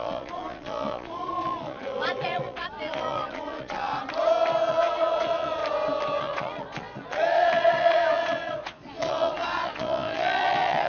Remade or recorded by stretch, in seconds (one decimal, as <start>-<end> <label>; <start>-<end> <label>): 0.0-3.9 remade; 3.9-4.7 recorded; 4.7-5.6 remade; 5.6-6.2 recorded; 6.2-10.9 remade